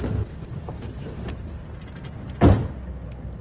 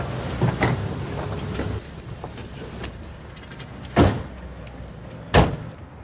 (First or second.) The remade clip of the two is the first